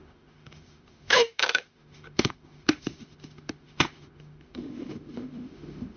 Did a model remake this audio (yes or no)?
yes